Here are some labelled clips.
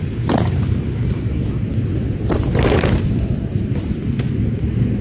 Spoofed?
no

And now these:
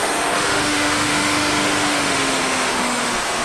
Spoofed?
yes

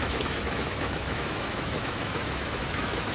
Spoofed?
yes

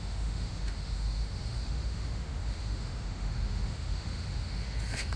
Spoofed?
yes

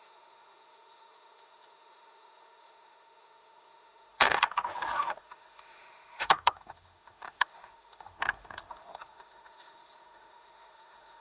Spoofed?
yes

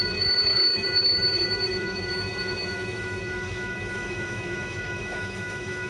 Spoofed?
yes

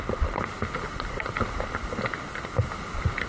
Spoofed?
no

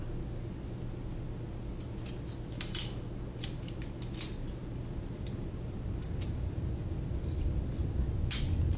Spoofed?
no